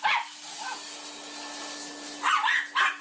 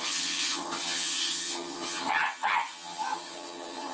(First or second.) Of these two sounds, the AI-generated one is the second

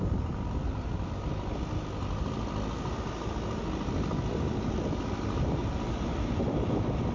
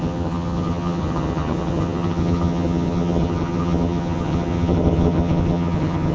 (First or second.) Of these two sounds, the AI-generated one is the second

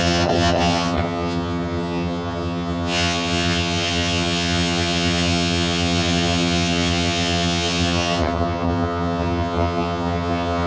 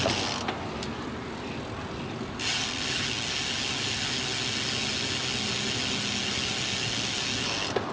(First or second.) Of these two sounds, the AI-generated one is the first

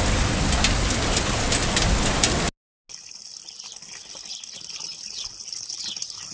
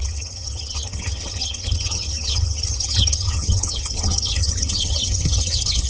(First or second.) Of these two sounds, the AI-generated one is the second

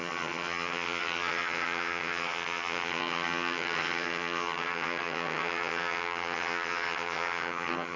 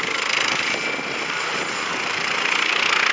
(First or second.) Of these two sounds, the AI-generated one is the first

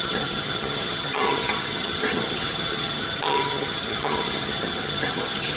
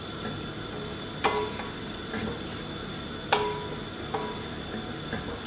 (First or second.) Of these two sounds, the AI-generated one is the first